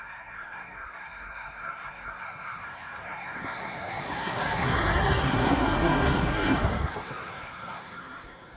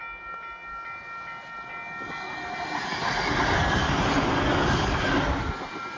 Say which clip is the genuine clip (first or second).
second